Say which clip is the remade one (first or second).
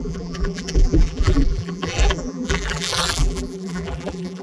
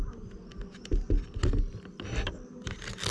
first